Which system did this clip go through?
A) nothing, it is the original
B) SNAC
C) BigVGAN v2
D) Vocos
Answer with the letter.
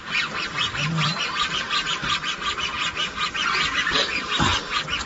A